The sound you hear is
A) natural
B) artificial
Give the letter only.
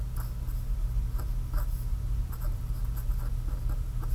A